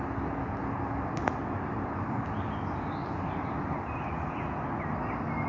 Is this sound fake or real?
real